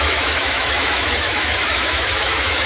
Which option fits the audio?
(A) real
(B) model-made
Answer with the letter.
B